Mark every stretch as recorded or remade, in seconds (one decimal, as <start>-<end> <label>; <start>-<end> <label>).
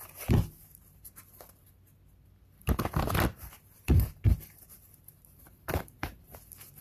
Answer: 0.0-3.3 recorded; 3.3-6.3 remade; 6.3-6.8 recorded